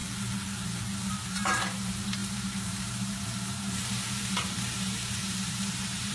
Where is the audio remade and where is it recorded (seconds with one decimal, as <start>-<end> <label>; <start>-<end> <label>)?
0.0-1.1 recorded; 1.1-6.1 remade